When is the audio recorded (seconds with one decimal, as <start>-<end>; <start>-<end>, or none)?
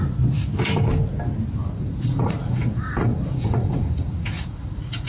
0.0-1.6